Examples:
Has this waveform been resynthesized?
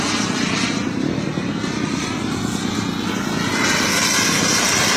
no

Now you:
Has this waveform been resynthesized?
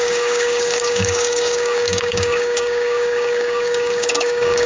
yes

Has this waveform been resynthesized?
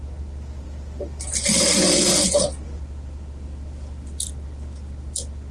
no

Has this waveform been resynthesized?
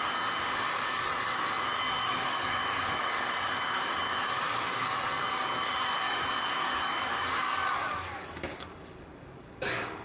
yes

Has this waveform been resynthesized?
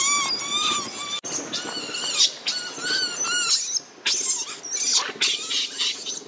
no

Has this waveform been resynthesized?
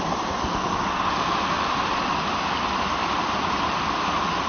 no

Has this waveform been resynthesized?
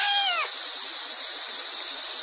no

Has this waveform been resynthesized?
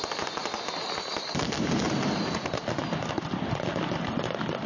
no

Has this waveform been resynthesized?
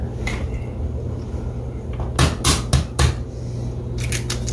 no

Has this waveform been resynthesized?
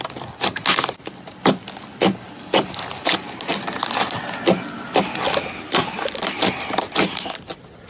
no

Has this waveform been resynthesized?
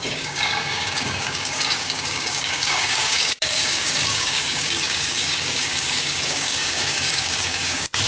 yes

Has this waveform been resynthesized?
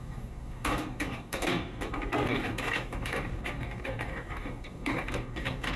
yes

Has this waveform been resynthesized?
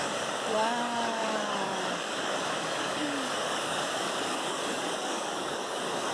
yes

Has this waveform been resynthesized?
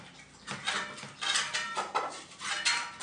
no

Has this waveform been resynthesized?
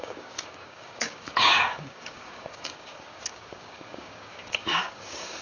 yes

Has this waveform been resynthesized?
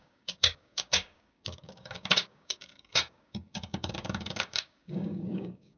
yes